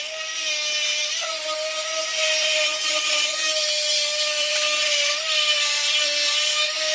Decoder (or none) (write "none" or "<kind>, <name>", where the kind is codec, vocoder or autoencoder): vocoder, BigVGAN v2